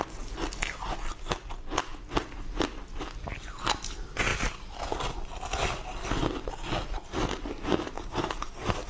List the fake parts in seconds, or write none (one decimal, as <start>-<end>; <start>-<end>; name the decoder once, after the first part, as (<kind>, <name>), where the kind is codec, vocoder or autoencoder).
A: none